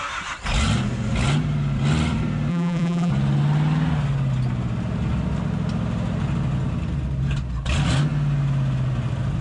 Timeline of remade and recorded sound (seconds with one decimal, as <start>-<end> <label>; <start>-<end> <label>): 0.0-2.5 recorded; 2.5-3.1 remade; 3.1-9.4 recorded